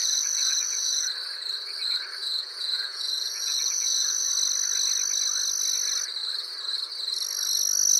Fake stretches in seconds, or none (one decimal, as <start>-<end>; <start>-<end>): 0.0-1.1; 2.2-4.3